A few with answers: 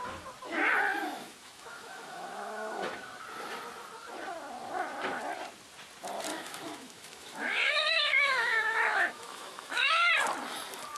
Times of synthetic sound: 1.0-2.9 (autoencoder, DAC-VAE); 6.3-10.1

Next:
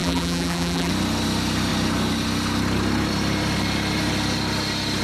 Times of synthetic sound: 0.0-0.9 (vocoder, BigVGAN v2)

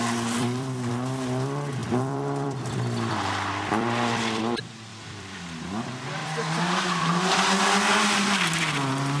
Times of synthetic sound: 0.4-0.9 (vocoder, BigVGAN v2); 1.8-4.4; 4.9-5.4; 6.2-7.5